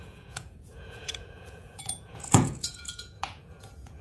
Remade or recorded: remade